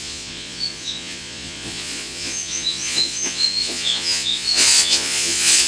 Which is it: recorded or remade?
remade